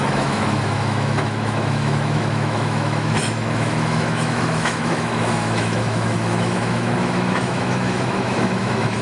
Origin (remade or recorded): remade